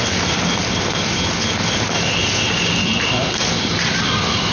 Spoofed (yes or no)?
no